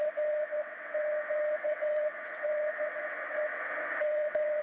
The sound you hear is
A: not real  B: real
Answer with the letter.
A